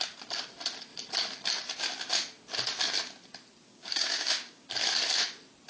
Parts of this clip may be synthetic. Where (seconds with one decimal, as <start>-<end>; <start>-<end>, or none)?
3.7-4.7